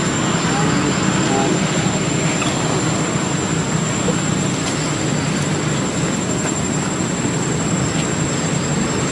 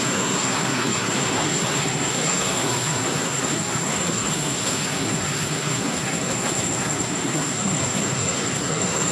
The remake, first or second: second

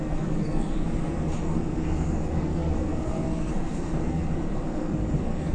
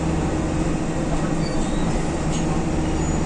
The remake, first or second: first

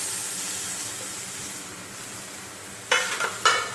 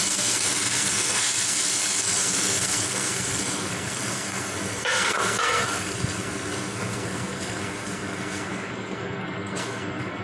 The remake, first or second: second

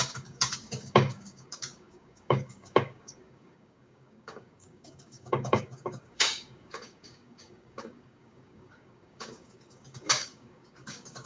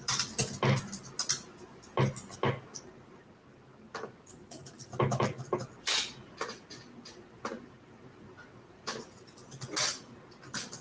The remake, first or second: first